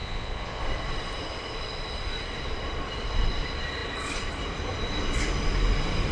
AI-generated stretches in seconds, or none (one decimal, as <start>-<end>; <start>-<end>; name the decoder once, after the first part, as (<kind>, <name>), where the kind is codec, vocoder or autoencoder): 0.0-0.6 (vocoder, Vocos)